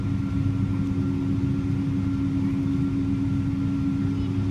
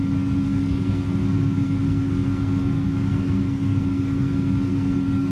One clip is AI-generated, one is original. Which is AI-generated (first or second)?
second